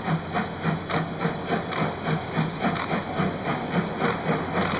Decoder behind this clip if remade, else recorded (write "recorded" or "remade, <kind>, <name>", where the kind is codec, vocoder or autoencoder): recorded